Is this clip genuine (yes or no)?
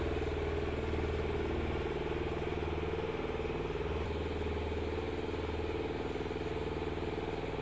yes